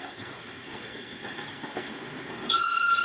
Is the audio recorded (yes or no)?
no